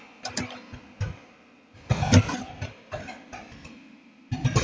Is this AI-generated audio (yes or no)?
no